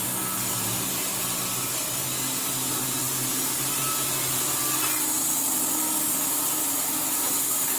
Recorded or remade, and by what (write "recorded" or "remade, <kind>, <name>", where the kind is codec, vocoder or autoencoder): recorded